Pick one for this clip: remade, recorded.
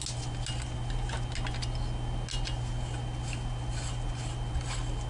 recorded